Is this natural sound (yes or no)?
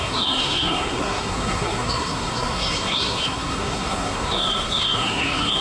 no